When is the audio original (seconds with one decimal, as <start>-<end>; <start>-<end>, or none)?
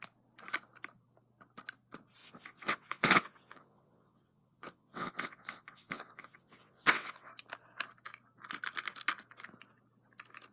0.0-2.2; 7.3-10.5